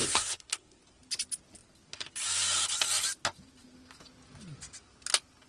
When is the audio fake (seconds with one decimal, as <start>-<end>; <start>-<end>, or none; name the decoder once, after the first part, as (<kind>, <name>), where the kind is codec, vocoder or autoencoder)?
0.0-0.8 (codec, SNAC)